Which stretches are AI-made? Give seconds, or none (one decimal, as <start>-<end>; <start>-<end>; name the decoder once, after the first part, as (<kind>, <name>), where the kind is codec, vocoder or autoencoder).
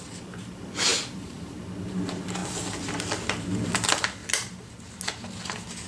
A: 0.9-1.6 (vocoder, BigVGAN v2); 4.2-4.7